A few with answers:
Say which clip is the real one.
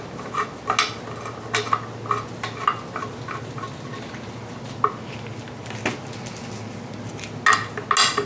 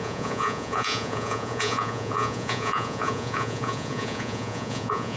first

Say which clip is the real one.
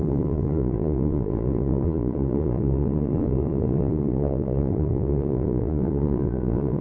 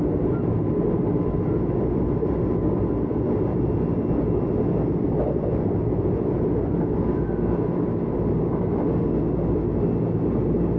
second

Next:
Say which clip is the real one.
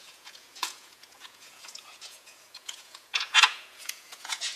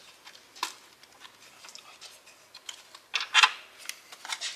second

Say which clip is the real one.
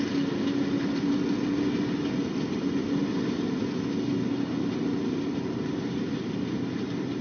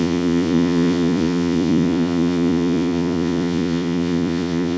first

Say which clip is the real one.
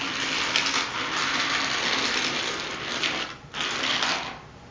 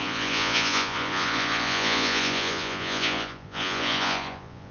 first